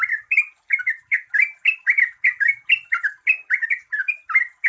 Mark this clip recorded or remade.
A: recorded